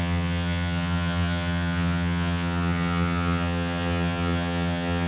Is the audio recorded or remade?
remade